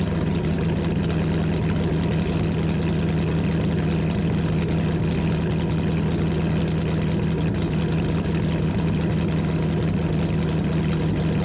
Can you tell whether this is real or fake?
real